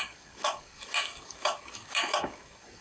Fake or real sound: fake